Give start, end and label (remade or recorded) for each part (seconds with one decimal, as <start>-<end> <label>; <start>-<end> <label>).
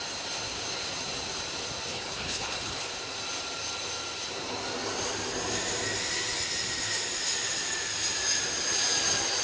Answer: 0.0-1.9 recorded; 1.9-2.9 remade; 2.9-9.4 recorded